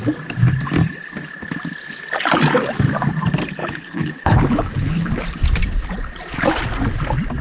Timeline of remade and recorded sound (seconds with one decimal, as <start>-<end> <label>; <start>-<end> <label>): 0.0-3.6 recorded; 3.6-5.1 remade; 5.1-7.4 recorded